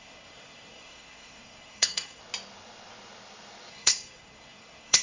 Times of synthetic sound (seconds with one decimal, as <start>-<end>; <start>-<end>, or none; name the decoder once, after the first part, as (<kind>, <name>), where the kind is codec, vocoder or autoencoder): 0.0-2.2 (codec, SNAC); 3.7-5.0